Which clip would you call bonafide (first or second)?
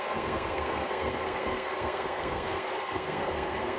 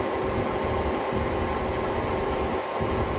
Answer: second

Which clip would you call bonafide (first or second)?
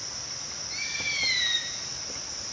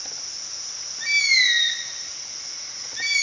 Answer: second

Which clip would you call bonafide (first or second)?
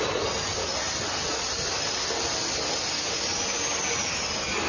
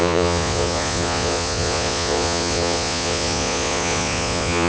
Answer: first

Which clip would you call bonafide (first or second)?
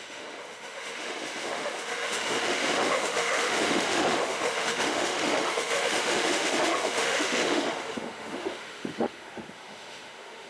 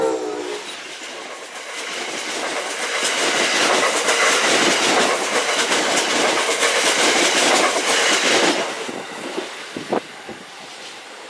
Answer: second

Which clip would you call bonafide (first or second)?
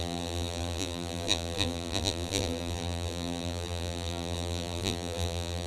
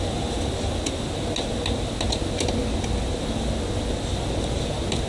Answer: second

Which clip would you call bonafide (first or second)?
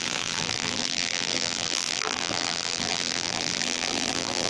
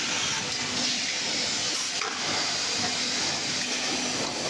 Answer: second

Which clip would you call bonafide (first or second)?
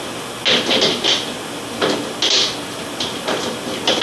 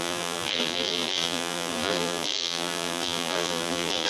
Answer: first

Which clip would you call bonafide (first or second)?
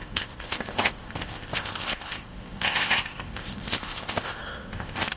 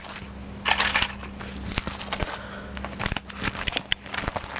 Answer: second